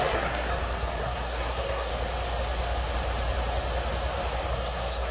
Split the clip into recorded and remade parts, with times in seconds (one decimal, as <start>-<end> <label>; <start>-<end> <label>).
0.0-0.5 remade; 0.5-1.0 recorded; 1.0-1.9 remade; 1.9-4.5 recorded; 4.5-5.1 remade